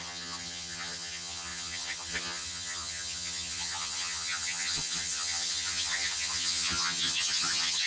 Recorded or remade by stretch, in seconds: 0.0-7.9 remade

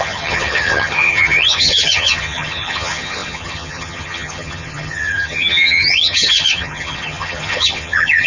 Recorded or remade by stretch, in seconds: 0.0-8.3 remade

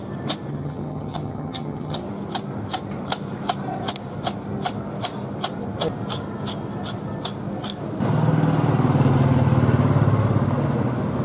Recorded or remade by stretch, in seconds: 0.0-0.5 recorded; 0.5-2.0 remade; 2.0-11.2 recorded

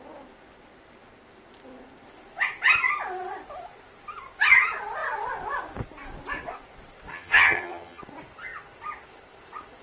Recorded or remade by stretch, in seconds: 0.0-7.1 recorded; 7.1-8.0 remade; 8.0-9.8 recorded

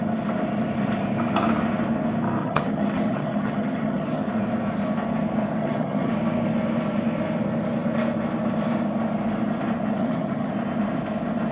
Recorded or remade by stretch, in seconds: 0.0-2.4 recorded; 2.4-4.2 remade; 4.2-5.6 recorded; 5.6-6.1 remade; 6.1-10.0 recorded; 10.0-10.5 remade; 10.5-11.5 recorded

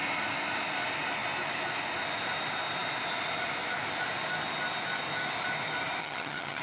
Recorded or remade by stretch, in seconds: 0.0-6.0 recorded; 6.0-6.6 remade